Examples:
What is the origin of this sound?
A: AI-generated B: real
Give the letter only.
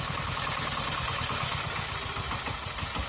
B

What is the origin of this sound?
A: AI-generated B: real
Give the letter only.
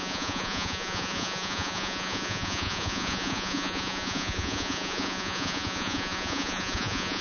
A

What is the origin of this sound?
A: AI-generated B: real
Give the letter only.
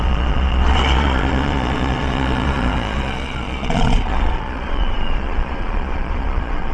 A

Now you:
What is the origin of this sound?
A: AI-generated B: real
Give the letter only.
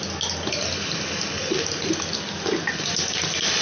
B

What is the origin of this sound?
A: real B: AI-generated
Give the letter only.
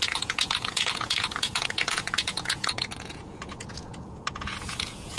B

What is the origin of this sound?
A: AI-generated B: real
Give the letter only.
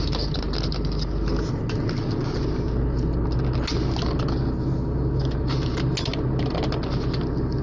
B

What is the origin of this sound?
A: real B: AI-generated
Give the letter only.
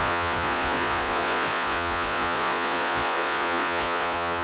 B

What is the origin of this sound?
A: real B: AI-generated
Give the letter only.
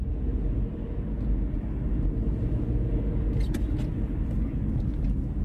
A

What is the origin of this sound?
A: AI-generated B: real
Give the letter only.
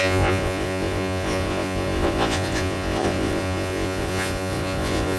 A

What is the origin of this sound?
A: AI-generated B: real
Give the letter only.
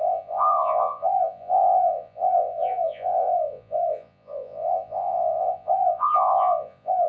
A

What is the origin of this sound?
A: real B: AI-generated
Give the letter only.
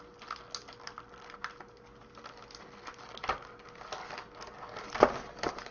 A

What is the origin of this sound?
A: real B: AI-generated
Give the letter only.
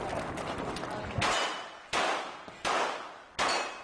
A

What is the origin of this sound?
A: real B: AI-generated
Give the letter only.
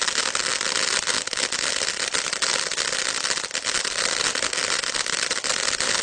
A